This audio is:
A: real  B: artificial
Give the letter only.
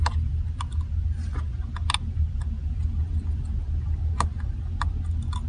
A